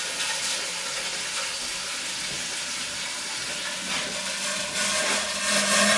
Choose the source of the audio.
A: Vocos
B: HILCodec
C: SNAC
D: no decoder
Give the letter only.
D